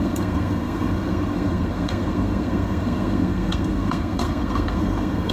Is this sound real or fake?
fake